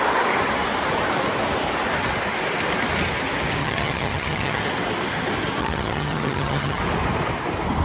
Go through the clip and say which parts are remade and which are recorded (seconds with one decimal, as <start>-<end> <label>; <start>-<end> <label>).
0.0-3.6 recorded; 3.6-4.6 remade; 4.6-5.6 recorded; 5.6-6.8 remade; 6.8-7.8 recorded